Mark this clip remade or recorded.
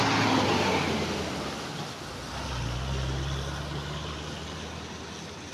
recorded